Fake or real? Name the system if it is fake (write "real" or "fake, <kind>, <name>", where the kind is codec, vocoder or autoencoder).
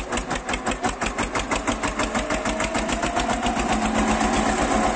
real